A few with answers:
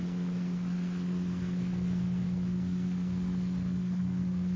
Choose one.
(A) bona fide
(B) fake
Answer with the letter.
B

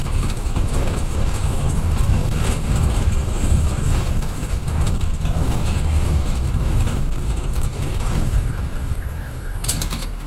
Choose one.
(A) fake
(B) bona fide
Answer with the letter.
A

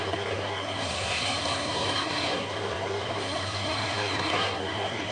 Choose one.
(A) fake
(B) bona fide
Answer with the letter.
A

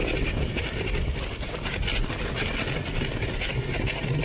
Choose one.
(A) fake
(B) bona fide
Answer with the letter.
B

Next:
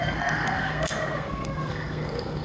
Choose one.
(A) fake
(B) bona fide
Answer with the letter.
A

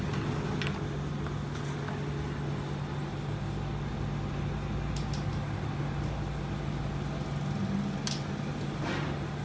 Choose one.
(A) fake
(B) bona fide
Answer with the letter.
B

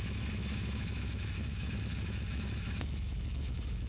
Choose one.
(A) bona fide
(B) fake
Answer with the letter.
B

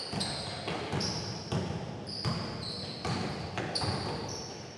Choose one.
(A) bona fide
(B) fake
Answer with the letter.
A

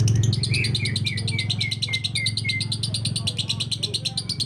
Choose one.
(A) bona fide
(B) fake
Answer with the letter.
A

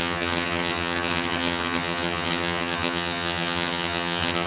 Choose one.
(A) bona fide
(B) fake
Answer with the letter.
B